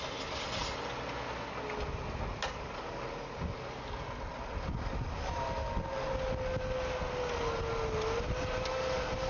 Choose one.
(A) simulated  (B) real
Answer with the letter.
B